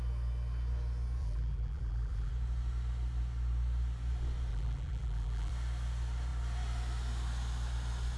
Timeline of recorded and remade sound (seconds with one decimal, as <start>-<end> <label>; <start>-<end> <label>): 0.0-1.2 recorded; 1.2-2.3 remade; 2.3-4.5 recorded; 4.5-5.5 remade; 5.5-8.2 recorded